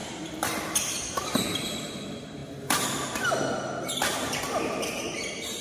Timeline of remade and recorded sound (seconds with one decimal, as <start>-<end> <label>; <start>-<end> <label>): 0.0-5.6 remade